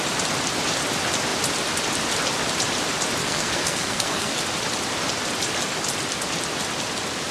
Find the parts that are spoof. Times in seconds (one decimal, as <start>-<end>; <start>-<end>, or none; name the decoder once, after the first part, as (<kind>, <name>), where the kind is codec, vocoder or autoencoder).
3.2-4.4 (codec, SNAC)